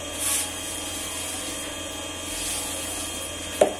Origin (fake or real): real